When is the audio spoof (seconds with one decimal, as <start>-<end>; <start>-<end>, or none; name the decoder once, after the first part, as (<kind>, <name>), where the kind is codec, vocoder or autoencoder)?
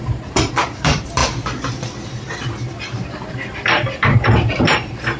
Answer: 0.0-1.2 (vocoder, BigVGAN v2); 3.3-5.2